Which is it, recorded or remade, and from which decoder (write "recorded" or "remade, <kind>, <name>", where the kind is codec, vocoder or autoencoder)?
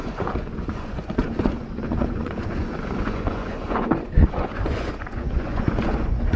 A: remade, vocoder, Vocos